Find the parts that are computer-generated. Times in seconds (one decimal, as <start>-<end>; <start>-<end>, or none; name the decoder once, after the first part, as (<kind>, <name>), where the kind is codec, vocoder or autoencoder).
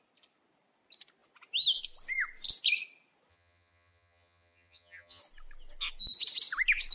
3.3-5.2 (vocoder, HiFi-GAN)